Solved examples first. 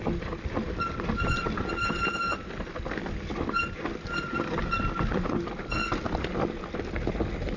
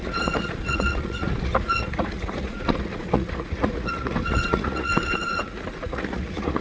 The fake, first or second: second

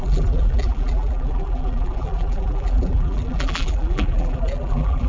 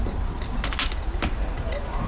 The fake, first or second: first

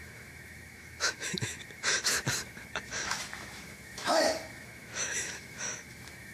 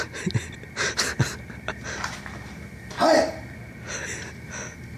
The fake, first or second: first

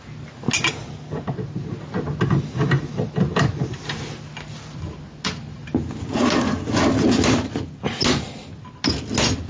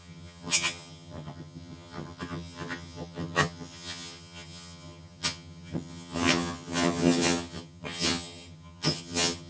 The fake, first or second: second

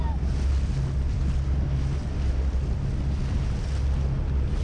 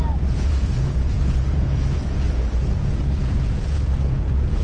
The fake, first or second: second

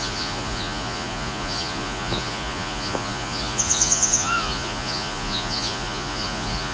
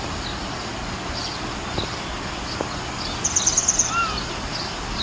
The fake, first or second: first